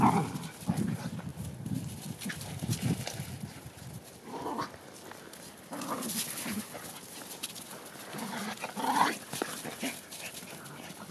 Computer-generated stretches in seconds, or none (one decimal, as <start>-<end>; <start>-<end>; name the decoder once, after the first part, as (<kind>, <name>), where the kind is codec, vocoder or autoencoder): none